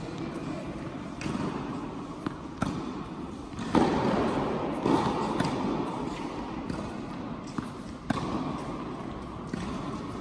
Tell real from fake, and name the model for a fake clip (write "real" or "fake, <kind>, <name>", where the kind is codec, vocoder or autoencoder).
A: real